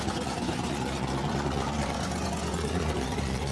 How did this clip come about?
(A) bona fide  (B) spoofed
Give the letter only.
B